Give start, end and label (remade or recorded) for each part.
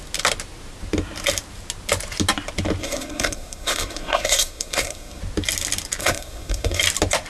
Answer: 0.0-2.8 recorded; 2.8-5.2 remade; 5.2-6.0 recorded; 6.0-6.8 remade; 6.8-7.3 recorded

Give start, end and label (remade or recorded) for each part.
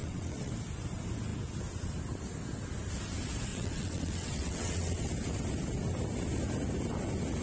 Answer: 0.0-0.5 remade; 0.5-3.5 recorded; 3.5-5.1 remade; 5.1-7.4 recorded